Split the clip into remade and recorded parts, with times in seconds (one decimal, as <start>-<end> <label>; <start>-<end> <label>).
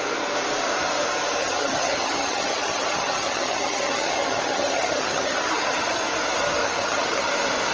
0.0-1.4 recorded; 1.4-6.0 remade; 6.0-6.6 recorded; 6.6-7.3 remade; 7.3-7.7 recorded